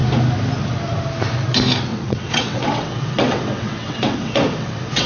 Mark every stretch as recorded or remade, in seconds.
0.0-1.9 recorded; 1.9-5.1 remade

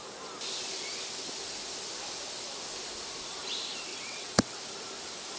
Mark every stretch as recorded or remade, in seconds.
0.0-3.9 recorded; 3.9-4.6 remade; 4.6-5.4 recorded